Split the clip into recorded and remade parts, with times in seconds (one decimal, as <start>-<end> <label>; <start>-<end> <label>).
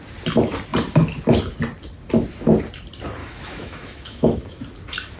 0.0-3.2 recorded; 3.2-4.6 remade; 4.6-5.2 recorded